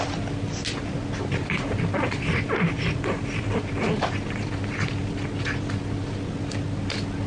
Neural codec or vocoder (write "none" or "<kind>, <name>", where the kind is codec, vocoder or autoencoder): none